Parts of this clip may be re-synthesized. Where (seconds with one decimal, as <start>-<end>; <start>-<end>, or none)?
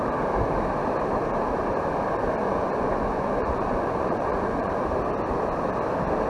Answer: 2.4-4.7